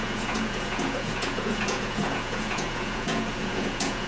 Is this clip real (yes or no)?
no